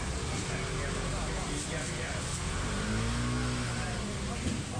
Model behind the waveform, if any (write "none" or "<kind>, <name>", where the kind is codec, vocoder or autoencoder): none